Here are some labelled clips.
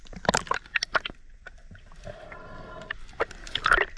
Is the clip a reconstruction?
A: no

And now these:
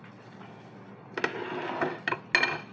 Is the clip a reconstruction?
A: no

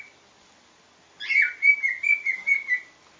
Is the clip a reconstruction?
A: no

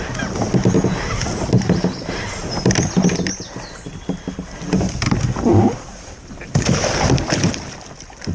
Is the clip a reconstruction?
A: no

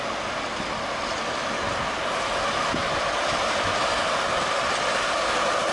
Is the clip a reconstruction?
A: no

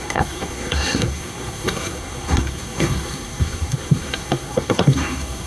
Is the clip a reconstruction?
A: yes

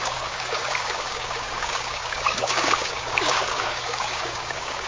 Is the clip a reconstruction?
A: yes